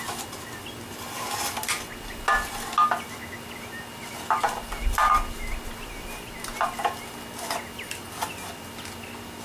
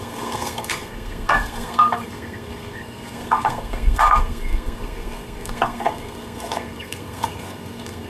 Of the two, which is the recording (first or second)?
first